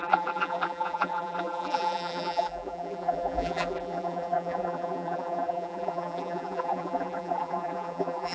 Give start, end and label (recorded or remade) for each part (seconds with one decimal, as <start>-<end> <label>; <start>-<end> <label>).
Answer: 0.0-8.3 remade